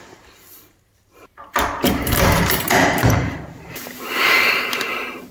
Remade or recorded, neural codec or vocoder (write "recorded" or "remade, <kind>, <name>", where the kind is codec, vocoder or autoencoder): remade, vocoder, BigVGAN v2